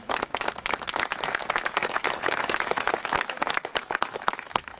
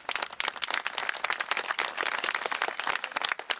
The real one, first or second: second